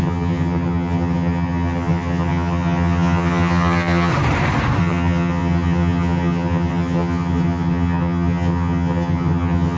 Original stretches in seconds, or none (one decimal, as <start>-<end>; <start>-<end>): 4.1-4.8